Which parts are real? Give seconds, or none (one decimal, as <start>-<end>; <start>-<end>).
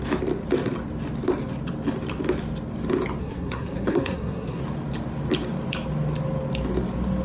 0.0-3.2; 4.6-7.2